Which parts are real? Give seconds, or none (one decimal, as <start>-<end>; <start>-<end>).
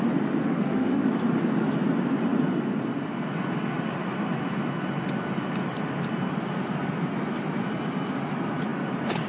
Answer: 0.0-0.4; 1.0-9.3